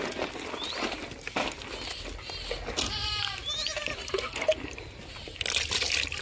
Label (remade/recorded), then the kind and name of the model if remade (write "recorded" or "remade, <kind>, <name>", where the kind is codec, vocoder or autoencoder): recorded